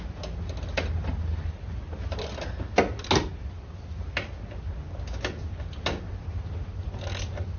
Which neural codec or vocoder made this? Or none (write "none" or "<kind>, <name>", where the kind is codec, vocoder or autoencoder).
none